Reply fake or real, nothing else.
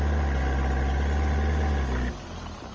real